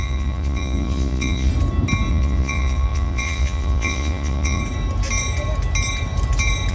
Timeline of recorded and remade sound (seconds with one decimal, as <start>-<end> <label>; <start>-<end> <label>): 0.0-1.5 remade; 1.5-2.1 recorded; 2.1-4.6 remade; 4.6-6.7 recorded